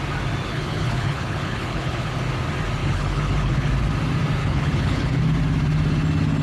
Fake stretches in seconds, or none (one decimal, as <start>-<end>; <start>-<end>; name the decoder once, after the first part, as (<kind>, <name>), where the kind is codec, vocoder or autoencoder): 0.5-2.1 (codec, HILCodec); 2.8-3.7; 4.4-5.2